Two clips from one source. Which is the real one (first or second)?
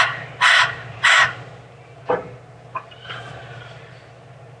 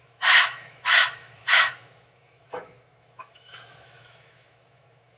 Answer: first